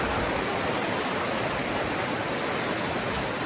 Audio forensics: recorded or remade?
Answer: recorded